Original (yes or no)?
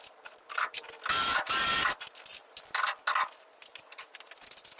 yes